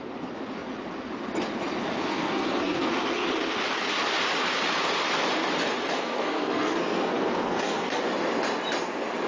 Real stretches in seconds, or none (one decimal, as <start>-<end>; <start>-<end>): 0.0-2.1; 2.9-5.8; 8.0-9.3